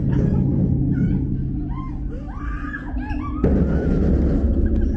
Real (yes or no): yes